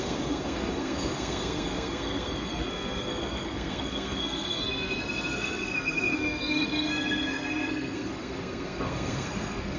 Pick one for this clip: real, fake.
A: fake